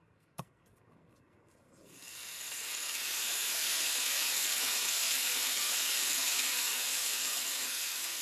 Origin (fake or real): fake